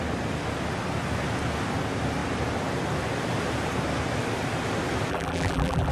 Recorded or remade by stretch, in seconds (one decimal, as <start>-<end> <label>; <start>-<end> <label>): 0.0-5.1 recorded; 5.1-5.9 remade